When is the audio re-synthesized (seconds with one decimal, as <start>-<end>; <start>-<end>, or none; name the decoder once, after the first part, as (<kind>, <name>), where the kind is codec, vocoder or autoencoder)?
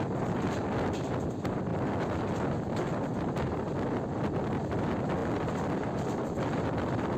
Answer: none